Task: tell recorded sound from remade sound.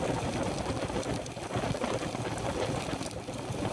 recorded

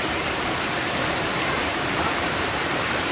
remade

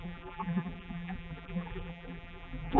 remade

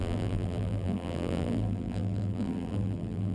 remade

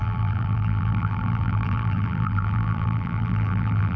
remade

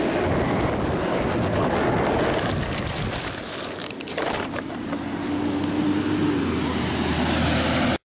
recorded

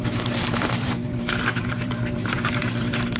remade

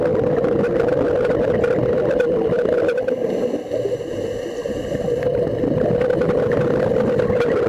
recorded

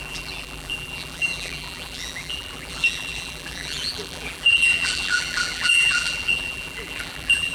remade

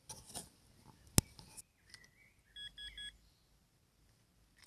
recorded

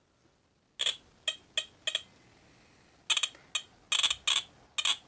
recorded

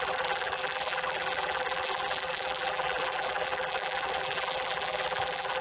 remade